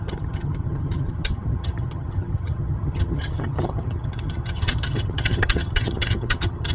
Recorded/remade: remade